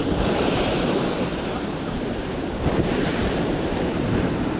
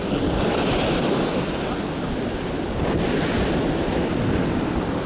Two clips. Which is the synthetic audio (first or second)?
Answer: first